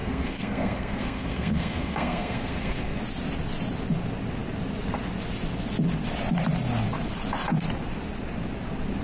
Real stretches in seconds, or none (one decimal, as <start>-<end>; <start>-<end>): 3.0-9.0